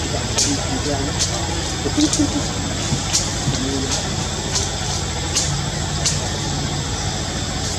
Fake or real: real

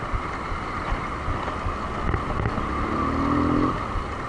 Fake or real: real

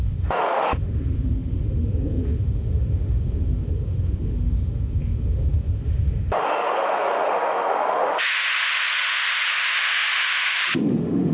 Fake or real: fake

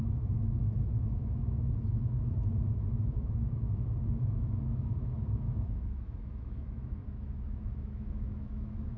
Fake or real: fake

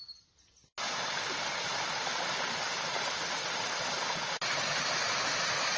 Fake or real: real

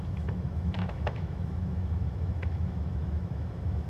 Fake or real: fake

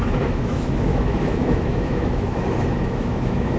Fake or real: fake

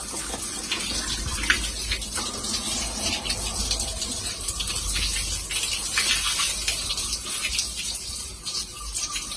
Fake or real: real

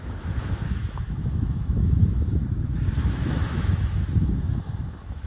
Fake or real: fake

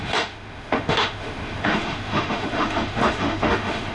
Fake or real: fake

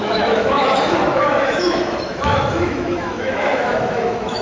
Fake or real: fake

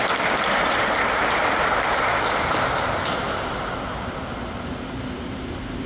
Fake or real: real